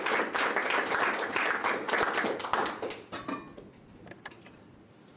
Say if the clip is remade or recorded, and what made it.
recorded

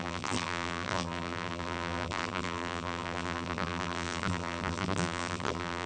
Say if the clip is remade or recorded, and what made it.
remade, vocoder, BigVGAN v2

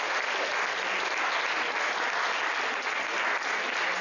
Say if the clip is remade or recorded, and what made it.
recorded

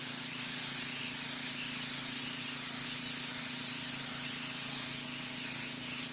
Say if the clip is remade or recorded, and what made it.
recorded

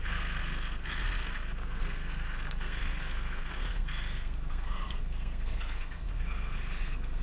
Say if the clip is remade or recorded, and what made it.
remade, codec, SNAC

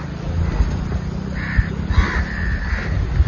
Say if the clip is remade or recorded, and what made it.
recorded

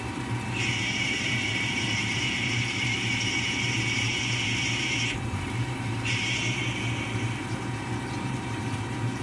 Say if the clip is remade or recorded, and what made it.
remade, vocoder, BigVGAN v2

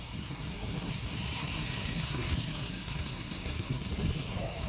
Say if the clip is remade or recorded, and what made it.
remade, codec, SNAC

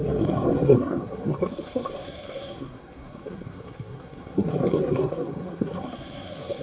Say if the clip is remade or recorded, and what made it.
remade, codec, SNAC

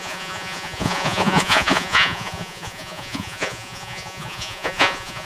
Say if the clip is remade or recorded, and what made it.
remade, vocoder, Vocos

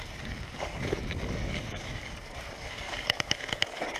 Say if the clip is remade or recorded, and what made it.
remade, codec, DAC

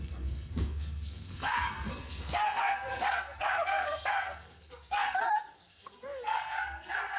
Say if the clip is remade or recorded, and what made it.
remade, codec, SNAC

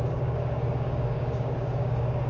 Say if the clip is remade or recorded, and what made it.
remade, codec, DAC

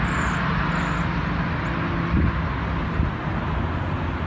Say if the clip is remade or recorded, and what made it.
recorded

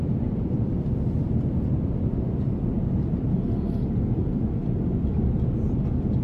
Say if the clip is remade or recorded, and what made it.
remade, vocoder, BigVGAN v2